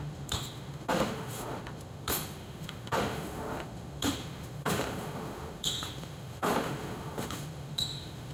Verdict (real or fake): fake